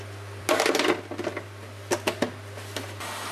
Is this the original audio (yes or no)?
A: yes